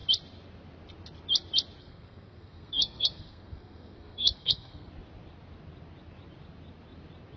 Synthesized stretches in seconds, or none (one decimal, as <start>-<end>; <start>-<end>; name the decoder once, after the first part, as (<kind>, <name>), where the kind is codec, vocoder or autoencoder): 1.8-4.9 (codec, SNAC)